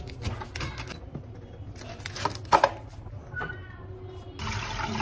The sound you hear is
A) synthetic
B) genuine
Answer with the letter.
B